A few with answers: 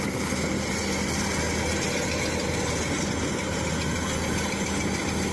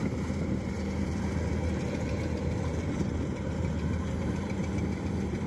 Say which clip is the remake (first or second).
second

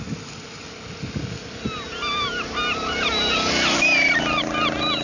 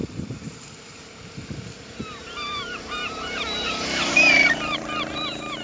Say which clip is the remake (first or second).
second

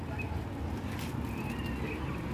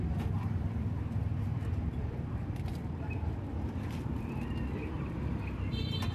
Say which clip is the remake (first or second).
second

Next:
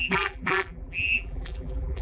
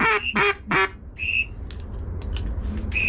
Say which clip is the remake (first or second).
first